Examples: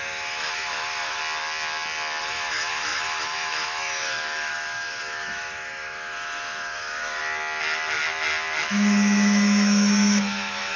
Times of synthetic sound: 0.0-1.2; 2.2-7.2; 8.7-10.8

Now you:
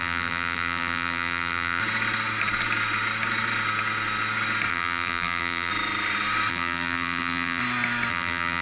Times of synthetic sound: 0.0-1.8; 4.7-5.7; 6.5-7.6; 8.1-8.6

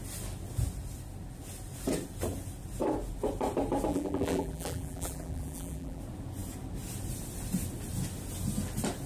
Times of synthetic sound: 3.9-6.0

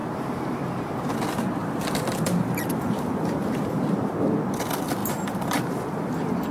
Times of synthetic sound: 0.0-1.2; 1.6-4.0; 5.0-5.6

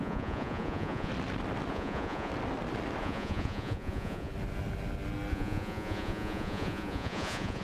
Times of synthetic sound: 0.0-1.1; 1.7-2.3; 3.0-4.3; 5.3-7.6

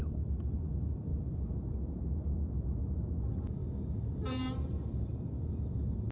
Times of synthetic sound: none